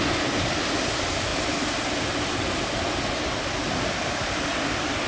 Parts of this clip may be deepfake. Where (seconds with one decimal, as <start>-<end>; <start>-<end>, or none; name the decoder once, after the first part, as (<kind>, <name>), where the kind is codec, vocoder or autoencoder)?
none